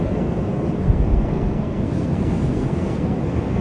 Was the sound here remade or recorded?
remade